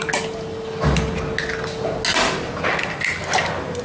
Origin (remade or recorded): recorded